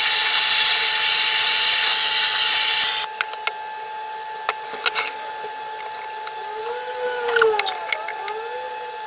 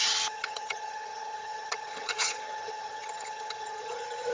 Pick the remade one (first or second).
second